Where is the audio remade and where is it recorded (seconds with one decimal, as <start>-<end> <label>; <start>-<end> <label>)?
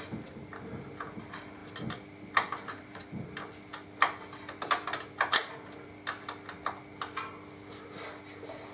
0.0-8.7 recorded